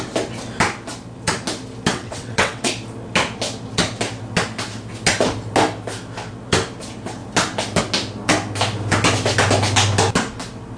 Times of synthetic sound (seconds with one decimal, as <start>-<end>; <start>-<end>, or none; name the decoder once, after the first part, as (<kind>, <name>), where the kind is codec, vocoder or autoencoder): 1.9-2.7 (vocoder, WaveNeXt)